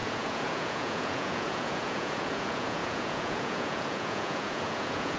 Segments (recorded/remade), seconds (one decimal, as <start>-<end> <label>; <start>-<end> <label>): 0.0-5.2 remade